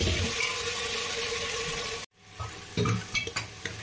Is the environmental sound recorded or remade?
recorded